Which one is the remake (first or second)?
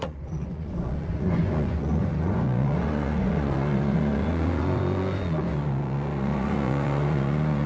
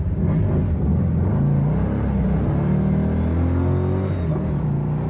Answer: first